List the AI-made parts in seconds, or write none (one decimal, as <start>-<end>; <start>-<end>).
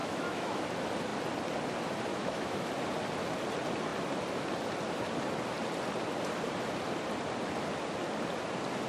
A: 0.0-0.6; 2.1-2.7